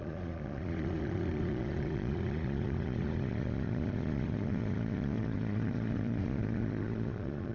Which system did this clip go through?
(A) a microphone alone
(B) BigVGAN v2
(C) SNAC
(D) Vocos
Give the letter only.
D